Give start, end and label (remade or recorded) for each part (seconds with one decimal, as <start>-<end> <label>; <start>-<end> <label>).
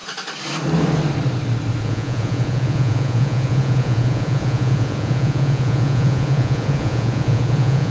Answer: 0.0-1.8 recorded; 1.8-7.9 remade